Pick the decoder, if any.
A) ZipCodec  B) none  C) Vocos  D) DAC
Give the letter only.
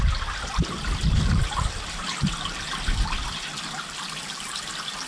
B